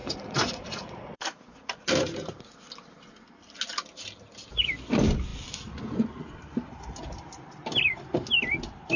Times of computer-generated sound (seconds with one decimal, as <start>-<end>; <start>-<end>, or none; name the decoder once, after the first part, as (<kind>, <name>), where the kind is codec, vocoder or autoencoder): 0.0-1.7 (vocoder, Vocos)